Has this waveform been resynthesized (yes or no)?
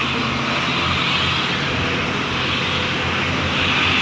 no